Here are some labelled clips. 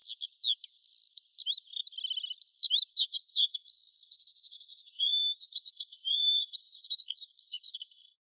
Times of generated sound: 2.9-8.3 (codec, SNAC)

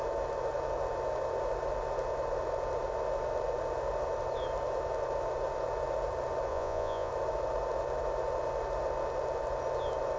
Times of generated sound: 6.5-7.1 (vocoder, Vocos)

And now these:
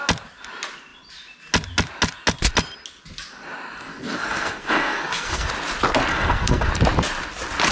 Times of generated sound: 3.9-5.5 (codec, SNAC); 6.1-6.7

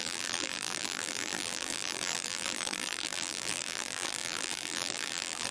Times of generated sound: 0.0-5.5 (vocoder, BigVGAN v2)

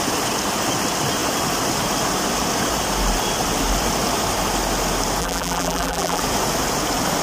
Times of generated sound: 5.2-6.2 (vocoder, BigVGAN v2)

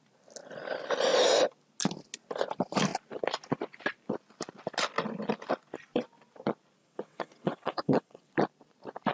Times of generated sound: 6.8-8.3 (vocoder, WaveNeXt)

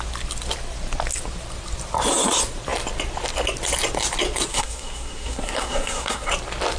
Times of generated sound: 4.5-6.3 (codec, SNAC)

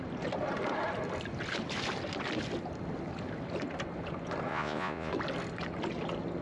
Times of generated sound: 4.5-5.1 (vocoder, Vocos)